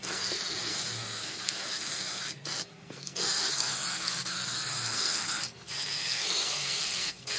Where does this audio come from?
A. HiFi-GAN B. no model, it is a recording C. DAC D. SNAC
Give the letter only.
D